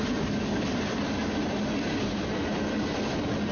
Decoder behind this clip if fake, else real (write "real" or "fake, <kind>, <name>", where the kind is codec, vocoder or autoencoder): real